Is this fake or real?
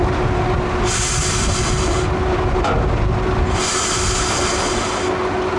real